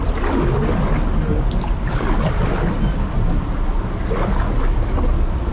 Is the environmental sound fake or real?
real